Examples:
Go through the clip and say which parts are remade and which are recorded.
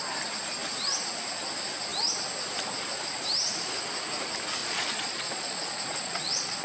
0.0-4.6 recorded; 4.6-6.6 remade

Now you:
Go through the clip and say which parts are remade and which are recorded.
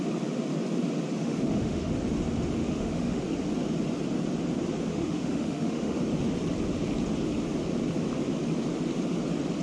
0.0-1.2 recorded; 1.2-1.9 remade; 1.9-2.6 recorded; 2.6-3.2 remade; 3.2-4.9 recorded; 4.9-6.0 remade; 6.0-9.6 recorded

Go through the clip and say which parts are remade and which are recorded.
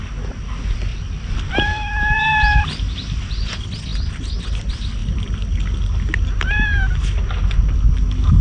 0.0-0.9 recorded; 0.9-2.8 remade; 2.8-8.4 recorded